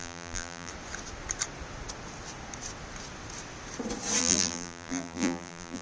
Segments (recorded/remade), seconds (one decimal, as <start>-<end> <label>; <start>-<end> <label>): 0.0-0.7 remade; 0.7-4.2 recorded; 4.2-5.8 remade